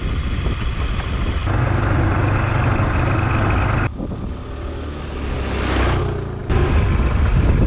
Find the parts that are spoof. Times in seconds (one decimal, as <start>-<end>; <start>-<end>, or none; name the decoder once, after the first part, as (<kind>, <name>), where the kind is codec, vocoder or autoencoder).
none